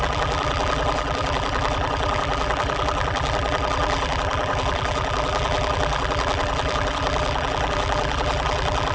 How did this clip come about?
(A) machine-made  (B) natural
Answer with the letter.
A